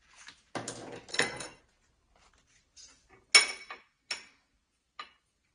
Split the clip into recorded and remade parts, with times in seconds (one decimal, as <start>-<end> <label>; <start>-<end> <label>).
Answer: 0.0-1.1 recorded; 1.1-1.6 remade; 1.6-5.5 recorded